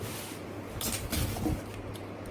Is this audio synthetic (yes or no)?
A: no